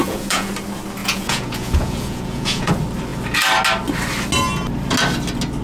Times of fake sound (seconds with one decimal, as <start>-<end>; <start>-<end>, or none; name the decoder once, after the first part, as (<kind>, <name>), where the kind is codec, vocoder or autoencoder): 0.0-0.5 (vocoder, Vocos); 1.0-2.7